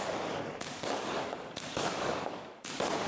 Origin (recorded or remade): remade